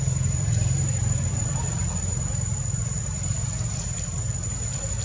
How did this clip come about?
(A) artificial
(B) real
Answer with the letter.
A